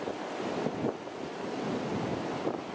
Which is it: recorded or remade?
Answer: recorded